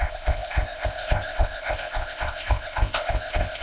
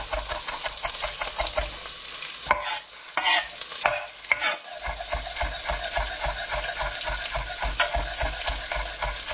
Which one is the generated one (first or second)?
first